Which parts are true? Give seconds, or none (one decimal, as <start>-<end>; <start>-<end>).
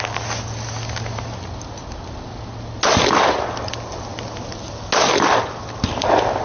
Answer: 0.0-6.4